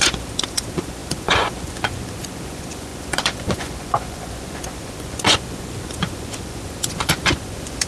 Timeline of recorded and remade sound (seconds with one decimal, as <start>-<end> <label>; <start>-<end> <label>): 0.0-7.9 remade